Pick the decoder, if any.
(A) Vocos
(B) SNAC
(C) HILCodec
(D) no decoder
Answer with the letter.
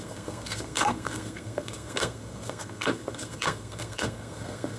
B